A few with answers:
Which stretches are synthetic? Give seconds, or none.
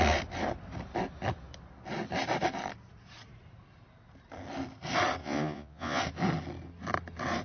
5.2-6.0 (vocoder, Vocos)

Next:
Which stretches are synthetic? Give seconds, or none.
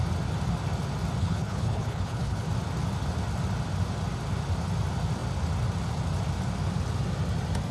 1.2-2.5 (codec, HILCodec)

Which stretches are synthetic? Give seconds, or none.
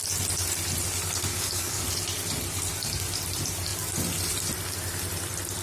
1.3-1.8 (codec, DAC)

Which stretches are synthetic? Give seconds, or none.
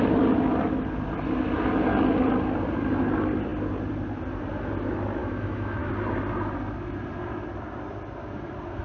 5.2-5.9 (autoencoder, DAC-VAE)